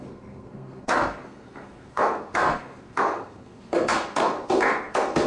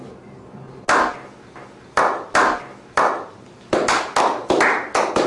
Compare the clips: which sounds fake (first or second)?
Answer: first